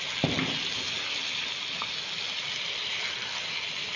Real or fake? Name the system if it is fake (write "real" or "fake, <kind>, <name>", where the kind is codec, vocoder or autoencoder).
real